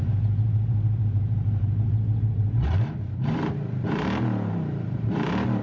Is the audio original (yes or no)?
no